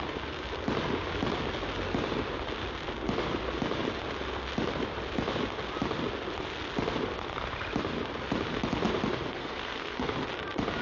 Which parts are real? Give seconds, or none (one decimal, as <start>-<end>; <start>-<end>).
0.0-9.3; 10.1-10.8